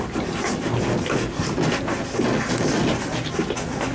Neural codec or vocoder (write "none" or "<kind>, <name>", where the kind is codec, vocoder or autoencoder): none